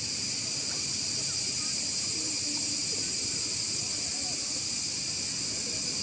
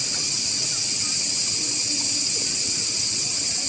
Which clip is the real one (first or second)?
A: first